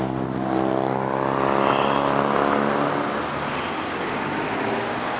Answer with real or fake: real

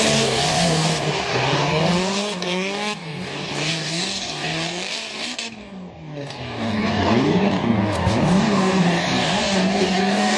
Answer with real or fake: fake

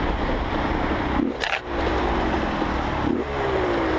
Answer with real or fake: real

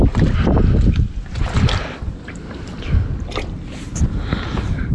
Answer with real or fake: real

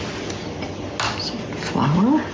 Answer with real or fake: real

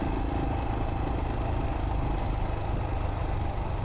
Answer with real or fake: real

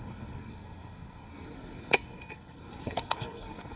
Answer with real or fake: fake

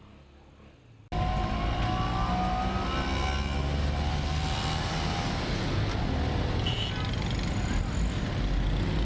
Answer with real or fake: real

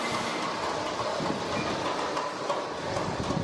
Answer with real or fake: real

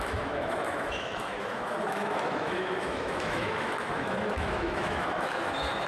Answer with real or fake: fake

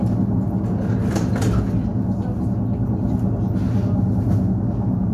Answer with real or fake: real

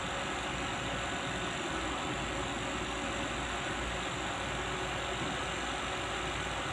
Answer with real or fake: real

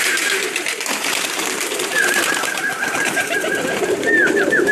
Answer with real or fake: fake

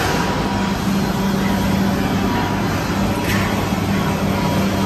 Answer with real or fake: real